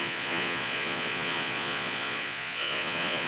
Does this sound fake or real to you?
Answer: fake